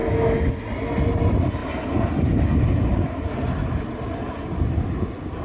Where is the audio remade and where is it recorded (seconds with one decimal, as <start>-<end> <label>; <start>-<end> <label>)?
0.0-0.5 remade; 0.5-5.4 recorded